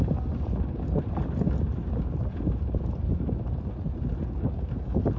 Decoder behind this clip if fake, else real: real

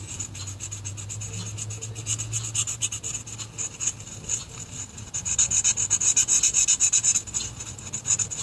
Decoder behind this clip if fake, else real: real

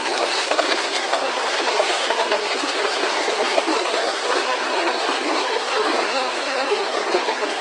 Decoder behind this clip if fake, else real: fake, codec, SNAC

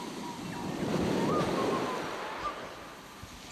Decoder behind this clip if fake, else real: real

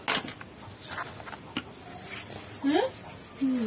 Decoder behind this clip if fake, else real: real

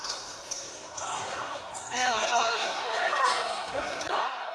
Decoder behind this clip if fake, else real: fake, codec, SNAC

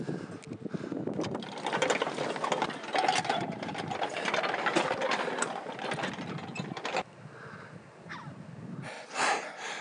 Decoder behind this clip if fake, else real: real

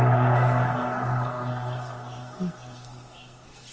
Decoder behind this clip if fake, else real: fake, codec, SNAC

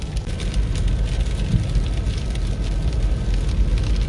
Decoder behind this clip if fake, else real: real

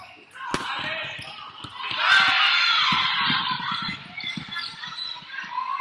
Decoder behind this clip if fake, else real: real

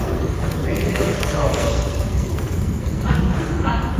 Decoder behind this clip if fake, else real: fake, codec, SNAC